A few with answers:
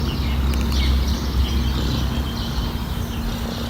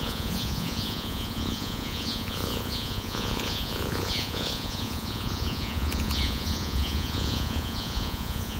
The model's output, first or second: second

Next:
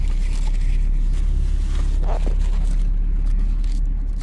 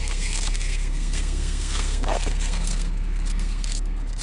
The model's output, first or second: second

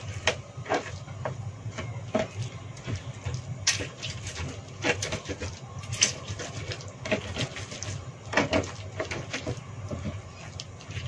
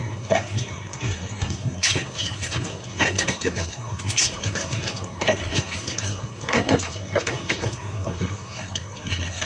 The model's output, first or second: second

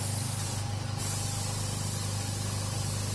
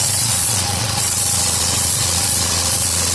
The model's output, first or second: second